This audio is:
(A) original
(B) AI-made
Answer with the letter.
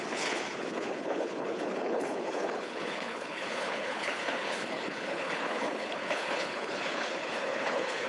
B